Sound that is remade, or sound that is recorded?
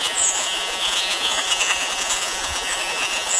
remade